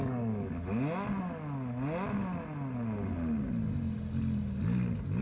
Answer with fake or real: real